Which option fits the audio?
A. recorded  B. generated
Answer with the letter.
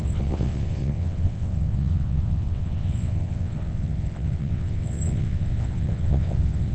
B